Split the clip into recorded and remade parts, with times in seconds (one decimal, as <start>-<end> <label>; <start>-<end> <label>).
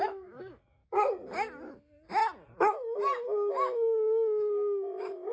0.0-0.8 remade; 0.8-1.7 recorded; 1.7-2.2 remade; 2.2-3.5 recorded; 3.5-5.3 remade